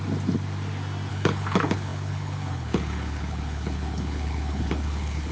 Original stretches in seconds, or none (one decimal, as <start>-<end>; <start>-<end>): 0.0-1.1